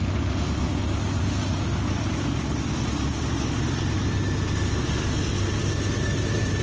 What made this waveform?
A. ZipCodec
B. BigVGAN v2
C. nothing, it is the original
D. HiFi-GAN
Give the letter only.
C